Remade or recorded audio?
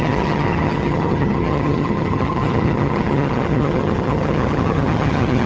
remade